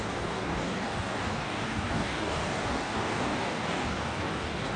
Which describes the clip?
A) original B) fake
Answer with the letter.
B